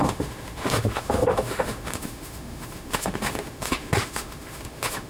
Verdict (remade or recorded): remade